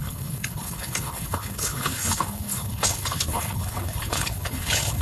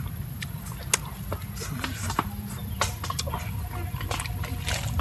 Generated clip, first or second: first